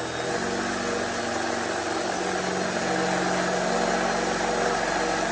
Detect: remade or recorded recorded